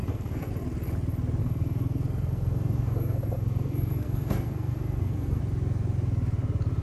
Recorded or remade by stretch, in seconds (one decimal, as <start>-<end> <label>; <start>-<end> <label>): 0.0-0.5 remade; 0.5-1.4 recorded; 1.4-5.4 remade; 5.4-6.8 recorded